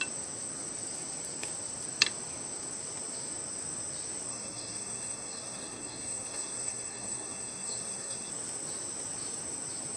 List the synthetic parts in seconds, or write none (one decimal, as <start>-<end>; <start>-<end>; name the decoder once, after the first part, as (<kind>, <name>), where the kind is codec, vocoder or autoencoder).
4.3-8.3 (codec, SNAC)